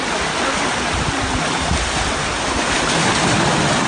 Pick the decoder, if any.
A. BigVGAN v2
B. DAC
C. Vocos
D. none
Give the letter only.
D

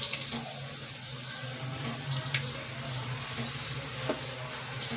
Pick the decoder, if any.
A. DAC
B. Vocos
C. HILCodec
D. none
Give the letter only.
D